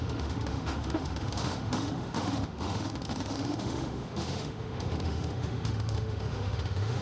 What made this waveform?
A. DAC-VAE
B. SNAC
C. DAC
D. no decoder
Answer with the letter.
A